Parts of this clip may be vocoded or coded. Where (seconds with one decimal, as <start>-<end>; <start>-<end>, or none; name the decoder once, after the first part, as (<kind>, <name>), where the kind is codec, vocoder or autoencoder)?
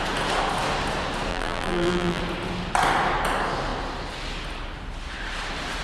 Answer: 1.3-2.2 (vocoder, BigVGAN v2)